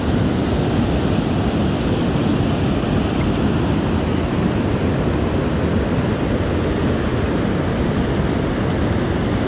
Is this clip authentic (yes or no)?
yes